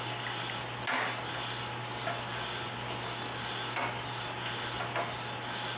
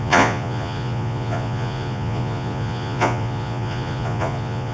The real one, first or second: first